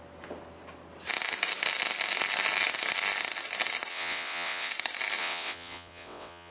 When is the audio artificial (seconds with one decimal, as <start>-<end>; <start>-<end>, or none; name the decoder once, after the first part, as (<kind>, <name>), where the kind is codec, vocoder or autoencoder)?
3.9-4.7 (vocoder, WaveNeXt); 5.2-6.5